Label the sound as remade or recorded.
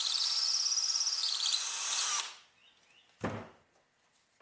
recorded